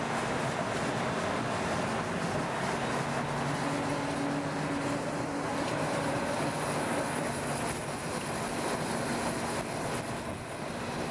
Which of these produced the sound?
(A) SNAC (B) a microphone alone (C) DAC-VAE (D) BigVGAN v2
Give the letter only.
B